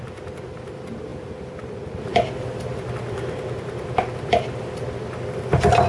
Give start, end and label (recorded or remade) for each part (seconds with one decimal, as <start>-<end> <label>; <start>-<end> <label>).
0.0-5.9 recorded